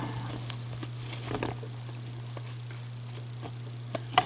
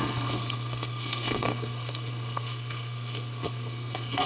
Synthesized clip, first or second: second